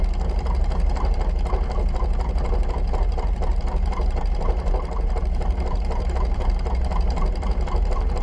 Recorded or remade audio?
remade